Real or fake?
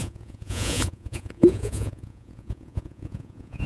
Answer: fake